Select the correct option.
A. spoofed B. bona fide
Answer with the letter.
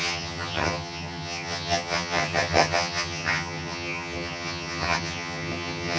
A